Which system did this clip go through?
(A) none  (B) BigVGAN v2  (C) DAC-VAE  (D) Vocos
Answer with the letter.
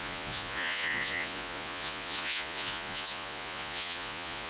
D